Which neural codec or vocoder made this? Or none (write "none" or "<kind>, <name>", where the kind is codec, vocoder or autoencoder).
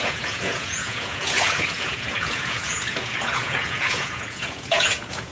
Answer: vocoder, Vocos